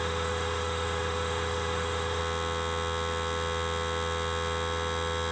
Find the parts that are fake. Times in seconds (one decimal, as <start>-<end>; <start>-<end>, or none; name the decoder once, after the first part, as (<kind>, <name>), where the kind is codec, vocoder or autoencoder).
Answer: 0.0-2.2 (autoencoder, DAC-VAE)